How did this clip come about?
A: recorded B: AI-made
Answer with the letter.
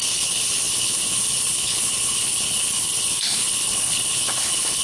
B